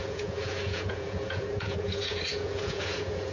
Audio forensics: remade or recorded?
remade